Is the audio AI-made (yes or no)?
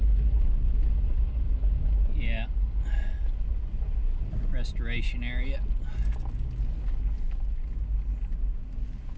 no